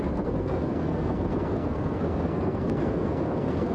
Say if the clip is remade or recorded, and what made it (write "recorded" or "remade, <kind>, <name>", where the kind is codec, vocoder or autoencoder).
remade, codec, SNAC